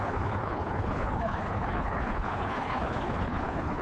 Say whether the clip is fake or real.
fake